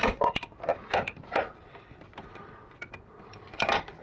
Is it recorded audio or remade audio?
recorded